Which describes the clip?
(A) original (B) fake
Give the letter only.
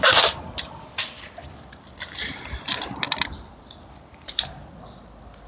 B